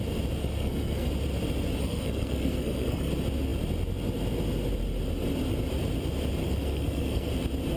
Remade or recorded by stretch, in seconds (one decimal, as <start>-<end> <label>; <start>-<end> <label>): 0.0-0.4 recorded; 0.4-1.1 remade; 1.1-1.8 recorded; 1.8-3.1 remade; 3.1-6.4 recorded; 6.4-7.3 remade; 7.3-7.8 recorded